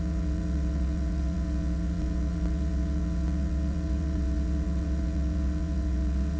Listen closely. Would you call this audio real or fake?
fake